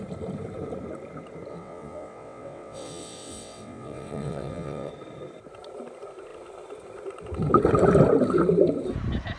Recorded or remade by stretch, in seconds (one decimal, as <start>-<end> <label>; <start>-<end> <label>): 0.0-1.5 recorded; 1.5-4.9 remade; 4.9-9.4 recorded